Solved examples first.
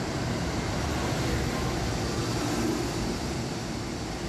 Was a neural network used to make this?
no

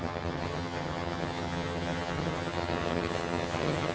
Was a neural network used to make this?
yes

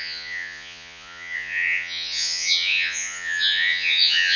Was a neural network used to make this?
yes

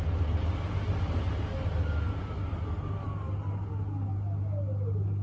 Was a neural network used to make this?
no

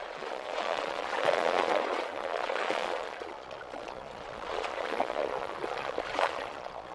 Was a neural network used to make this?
yes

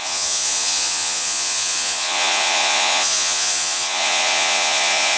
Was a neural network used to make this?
yes